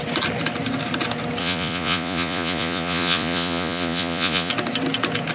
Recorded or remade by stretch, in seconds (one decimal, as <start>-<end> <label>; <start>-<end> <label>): 0.0-1.4 recorded; 1.4-4.5 remade; 4.5-5.3 recorded